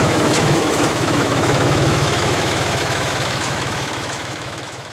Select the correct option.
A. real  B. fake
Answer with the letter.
B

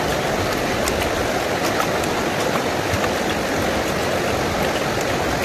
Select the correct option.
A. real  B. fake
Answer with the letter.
A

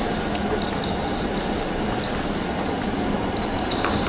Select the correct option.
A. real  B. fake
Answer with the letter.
A